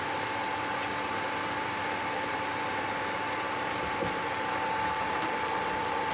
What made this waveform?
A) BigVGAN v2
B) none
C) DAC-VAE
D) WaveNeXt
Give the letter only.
A